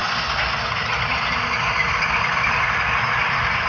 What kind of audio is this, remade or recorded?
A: recorded